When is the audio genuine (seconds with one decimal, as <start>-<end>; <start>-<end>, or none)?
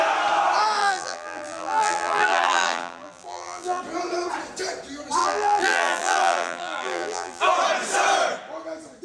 0.0-0.8; 3.8-5.2; 7.4-9.0